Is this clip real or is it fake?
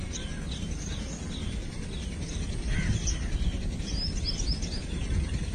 real